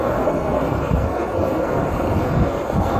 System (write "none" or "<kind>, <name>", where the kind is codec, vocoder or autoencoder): codec, SNAC